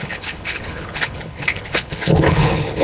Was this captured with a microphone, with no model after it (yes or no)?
no